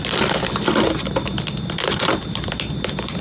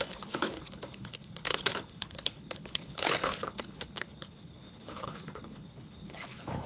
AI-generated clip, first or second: second